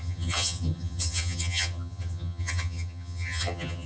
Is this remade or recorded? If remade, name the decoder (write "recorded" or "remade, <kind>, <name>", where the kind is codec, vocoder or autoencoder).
remade, vocoder, HiFi-GAN